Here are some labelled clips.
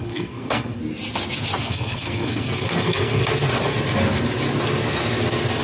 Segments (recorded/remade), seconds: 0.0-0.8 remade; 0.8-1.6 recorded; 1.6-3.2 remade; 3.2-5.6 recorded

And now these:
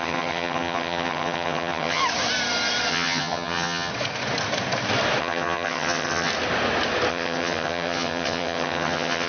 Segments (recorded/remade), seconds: 0.0-2.0 remade; 2.0-2.9 recorded; 2.9-3.9 remade; 3.9-5.2 recorded; 5.2-6.3 remade; 6.3-7.1 recorded; 7.1-9.3 remade

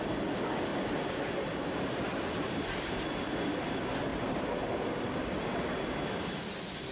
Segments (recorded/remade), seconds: 0.0-4.1 recorded; 4.1-4.6 remade; 4.6-6.9 recorded

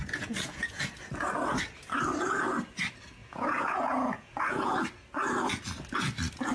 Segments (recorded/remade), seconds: 0.0-0.8 remade; 0.8-3.2 recorded; 3.2-4.7 remade; 4.7-6.5 recorded

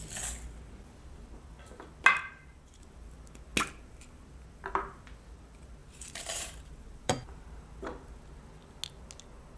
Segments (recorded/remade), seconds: 0.0-2.2 recorded; 2.2-2.8 remade; 2.8-5.8 recorded; 5.8-7.7 remade; 7.7-9.6 recorded

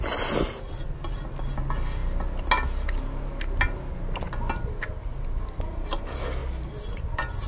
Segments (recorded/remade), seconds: 0.0-7.5 recorded

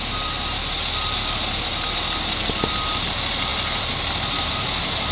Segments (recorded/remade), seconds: 0.0-3.5 recorded; 3.5-4.5 remade; 4.5-5.1 recorded